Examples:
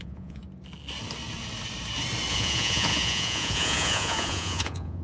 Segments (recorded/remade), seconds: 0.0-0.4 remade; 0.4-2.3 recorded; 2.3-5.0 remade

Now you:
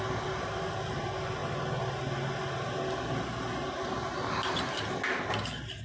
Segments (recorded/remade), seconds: 0.0-5.8 recorded

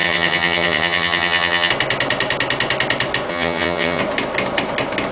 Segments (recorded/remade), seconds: 0.0-1.7 remade; 1.7-3.3 recorded; 3.3-4.0 remade; 4.0-5.1 recorded

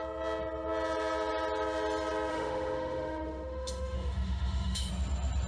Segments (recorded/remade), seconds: 0.0-2.3 recorded; 2.3-4.9 remade; 4.9-5.5 recorded